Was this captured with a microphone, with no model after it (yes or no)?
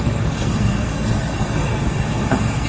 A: no